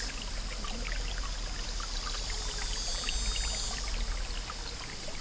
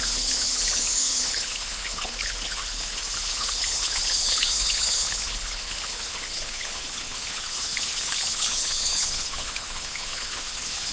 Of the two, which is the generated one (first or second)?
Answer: second